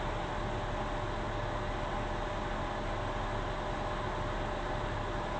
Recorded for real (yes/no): yes